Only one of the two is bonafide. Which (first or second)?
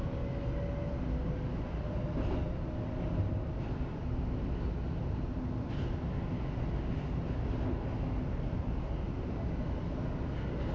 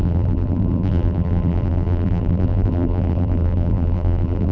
first